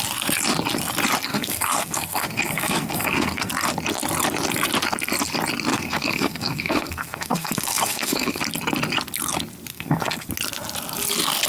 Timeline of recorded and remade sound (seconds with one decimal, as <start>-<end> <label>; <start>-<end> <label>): 0.0-1.3 recorded; 1.3-3.5 remade; 3.5-5.7 recorded; 5.7-8.4 remade; 8.4-9.7 recorded; 9.7-10.3 remade; 10.3-11.5 recorded